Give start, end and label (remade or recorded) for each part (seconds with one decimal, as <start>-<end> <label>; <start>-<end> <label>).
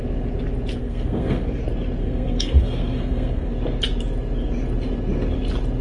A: 0.0-0.8 recorded; 0.8-1.6 remade; 1.6-2.0 recorded; 2.0-3.5 remade; 3.5-5.8 recorded